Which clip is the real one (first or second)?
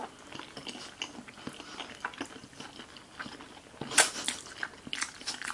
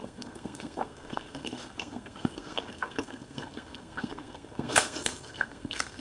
first